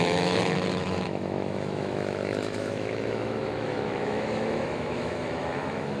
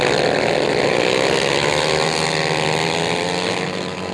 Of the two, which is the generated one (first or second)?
first